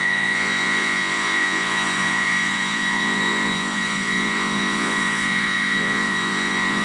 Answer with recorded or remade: remade